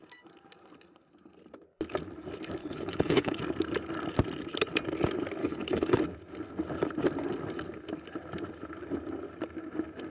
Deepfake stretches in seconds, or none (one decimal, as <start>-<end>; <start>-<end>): 2.6-3.4; 5.4-6.0